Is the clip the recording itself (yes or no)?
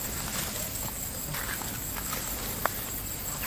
yes